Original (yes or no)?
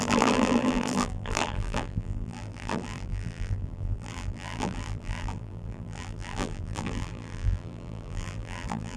no